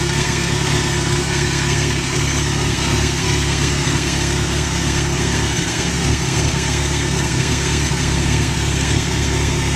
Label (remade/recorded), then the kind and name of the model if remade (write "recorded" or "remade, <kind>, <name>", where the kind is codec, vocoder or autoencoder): remade, codec, SNAC